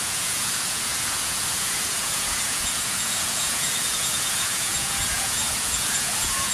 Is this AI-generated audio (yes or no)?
yes